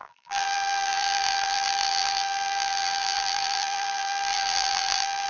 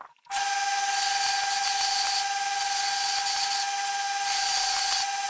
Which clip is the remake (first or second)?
first